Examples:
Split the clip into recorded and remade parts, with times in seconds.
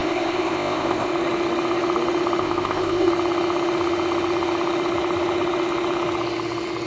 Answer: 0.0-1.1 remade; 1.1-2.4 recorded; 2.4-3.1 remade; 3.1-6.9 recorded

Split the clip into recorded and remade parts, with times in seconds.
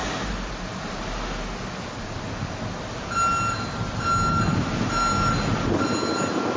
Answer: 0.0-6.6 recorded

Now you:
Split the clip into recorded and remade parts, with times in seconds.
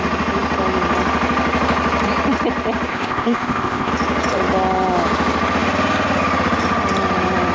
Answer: 0.0-2.9 recorded; 2.9-3.9 remade; 3.9-7.5 recorded